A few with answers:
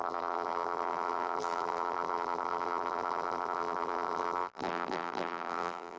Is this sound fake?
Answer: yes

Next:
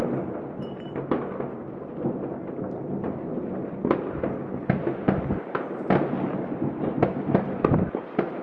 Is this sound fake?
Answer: no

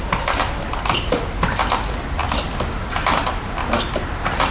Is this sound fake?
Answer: no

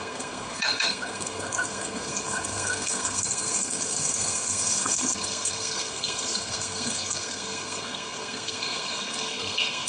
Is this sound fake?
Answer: yes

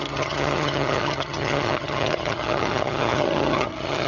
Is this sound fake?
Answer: yes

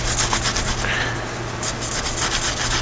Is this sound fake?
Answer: no